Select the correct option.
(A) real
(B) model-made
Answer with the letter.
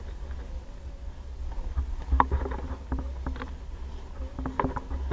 A